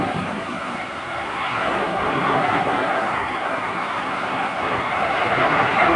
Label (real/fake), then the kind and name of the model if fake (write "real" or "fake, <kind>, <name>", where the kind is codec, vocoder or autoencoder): fake, codec, SNAC